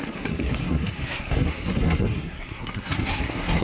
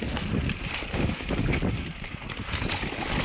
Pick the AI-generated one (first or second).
first